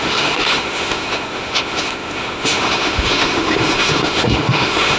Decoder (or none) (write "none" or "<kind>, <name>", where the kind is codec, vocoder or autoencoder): autoencoder, DAC-VAE